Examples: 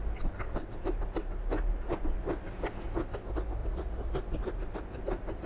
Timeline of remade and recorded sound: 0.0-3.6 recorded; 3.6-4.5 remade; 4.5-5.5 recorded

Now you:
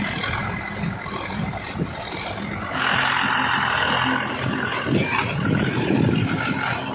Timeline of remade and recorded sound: 0.0-6.9 recorded